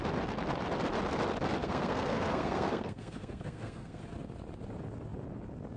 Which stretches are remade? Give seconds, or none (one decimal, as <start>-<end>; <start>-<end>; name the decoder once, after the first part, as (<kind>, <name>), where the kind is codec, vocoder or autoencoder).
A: 1.6-4.0 (codec, SNAC)